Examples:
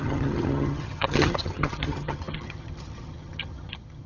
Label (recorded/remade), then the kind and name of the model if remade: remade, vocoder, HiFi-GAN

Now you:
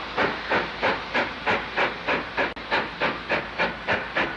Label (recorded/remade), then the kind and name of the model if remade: recorded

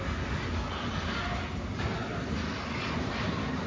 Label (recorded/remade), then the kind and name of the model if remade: recorded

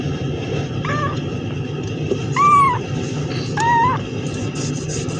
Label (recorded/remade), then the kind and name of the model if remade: recorded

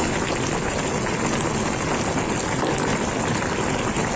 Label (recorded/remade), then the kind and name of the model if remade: recorded